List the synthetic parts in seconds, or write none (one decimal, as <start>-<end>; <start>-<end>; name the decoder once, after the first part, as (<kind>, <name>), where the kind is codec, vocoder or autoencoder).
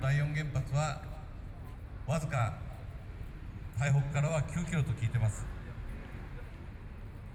0.6-5.0 (vocoder, BigVGAN v2)